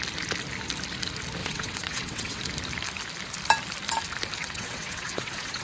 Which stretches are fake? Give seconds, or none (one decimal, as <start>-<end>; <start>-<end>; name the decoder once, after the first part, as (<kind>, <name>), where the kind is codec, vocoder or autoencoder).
1.4-2.4 (vocoder, WaveNeXt); 4.4-5.6